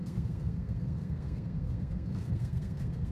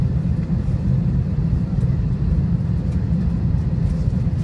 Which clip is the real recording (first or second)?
second